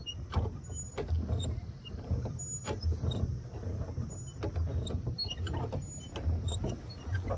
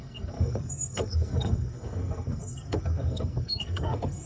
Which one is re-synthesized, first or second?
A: second